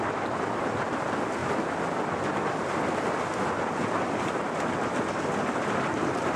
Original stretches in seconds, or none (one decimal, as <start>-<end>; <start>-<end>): 0.0-6.4